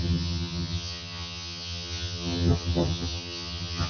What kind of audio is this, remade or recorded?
remade